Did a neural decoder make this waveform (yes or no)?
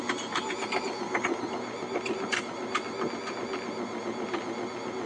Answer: no